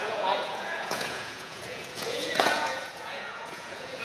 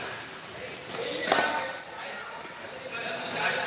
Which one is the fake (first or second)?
first